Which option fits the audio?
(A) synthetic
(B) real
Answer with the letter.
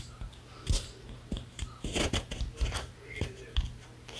B